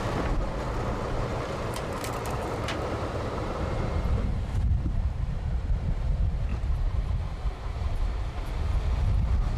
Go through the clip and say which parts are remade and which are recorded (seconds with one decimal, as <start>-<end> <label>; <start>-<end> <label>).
0.0-1.3 recorded; 1.3-5.4 remade; 5.4-6.5 recorded; 6.5-8.0 remade; 8.0-9.6 recorded